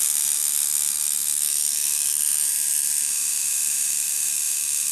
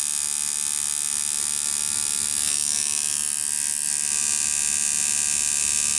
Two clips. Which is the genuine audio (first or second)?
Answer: second